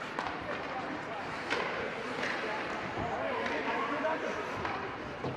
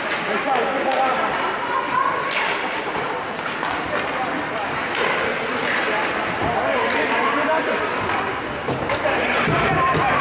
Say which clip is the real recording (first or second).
second